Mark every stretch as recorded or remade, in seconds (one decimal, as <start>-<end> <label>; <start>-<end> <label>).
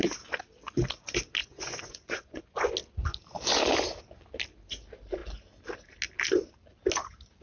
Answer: 0.0-1.4 recorded; 1.4-2.7 remade; 2.7-7.4 recorded